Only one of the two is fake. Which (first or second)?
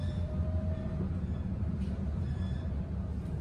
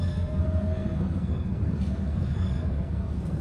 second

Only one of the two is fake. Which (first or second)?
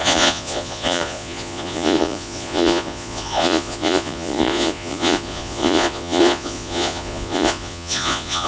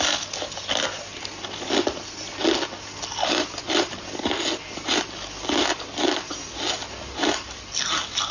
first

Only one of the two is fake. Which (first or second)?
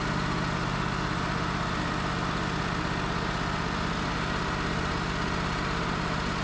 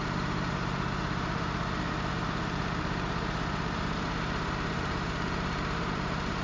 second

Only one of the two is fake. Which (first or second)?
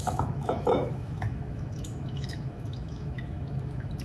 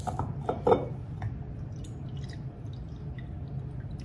first